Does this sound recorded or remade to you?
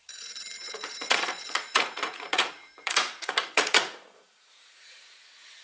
remade